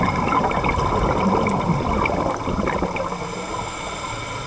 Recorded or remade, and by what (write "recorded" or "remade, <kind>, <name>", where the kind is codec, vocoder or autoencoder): recorded